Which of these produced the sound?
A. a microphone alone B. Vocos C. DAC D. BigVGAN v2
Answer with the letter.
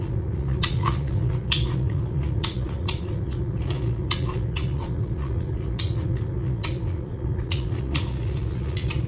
B